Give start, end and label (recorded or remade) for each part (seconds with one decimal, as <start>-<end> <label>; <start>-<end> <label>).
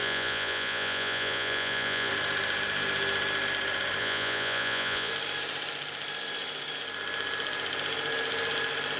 0.0-2.1 remade; 2.1-4.0 recorded; 4.0-5.1 remade; 5.1-9.0 recorded